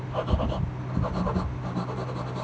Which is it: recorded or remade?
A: recorded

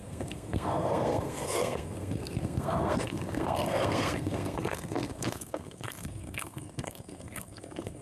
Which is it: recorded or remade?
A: remade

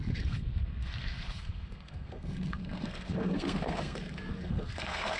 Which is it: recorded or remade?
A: remade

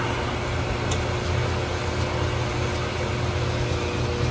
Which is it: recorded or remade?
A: recorded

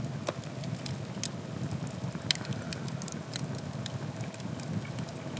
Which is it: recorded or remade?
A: recorded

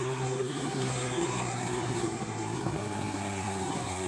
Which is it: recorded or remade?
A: remade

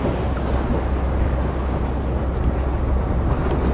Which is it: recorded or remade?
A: recorded